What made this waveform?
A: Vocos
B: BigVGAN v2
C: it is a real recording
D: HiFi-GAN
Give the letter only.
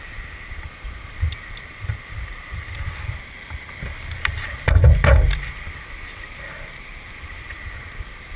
B